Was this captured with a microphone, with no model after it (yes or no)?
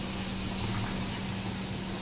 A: yes